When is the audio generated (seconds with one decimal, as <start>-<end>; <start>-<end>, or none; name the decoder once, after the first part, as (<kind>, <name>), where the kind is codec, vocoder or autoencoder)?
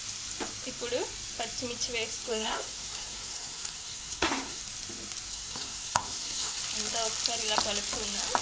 2.3-4.6 (codec, SNAC); 5.3-6.6